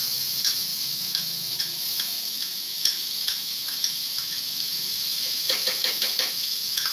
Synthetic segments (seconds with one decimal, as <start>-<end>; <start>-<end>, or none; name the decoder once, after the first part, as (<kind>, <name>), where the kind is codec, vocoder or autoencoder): 0.0-6.9 (autoencoder, DAC-VAE)